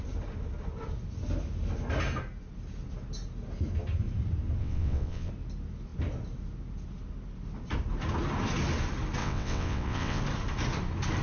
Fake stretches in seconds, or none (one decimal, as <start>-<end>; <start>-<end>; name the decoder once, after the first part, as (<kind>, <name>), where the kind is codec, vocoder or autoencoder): 4.6-5.3 (vocoder, WaveNeXt); 9.2-10.2